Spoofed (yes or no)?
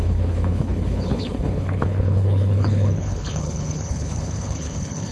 yes